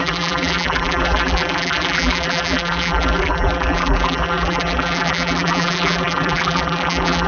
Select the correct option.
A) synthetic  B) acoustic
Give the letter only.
A